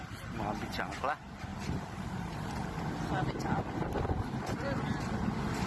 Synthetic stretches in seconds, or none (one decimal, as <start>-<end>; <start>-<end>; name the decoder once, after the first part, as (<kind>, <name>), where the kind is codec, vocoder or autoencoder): 1.5-2.8 (vocoder, BigVGAN v2)